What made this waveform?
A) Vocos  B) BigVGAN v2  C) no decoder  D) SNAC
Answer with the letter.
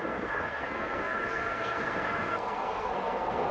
D